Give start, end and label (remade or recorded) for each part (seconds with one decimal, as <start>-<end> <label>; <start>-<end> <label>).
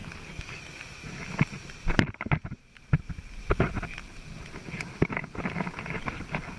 0.0-0.6 remade; 0.6-6.6 recorded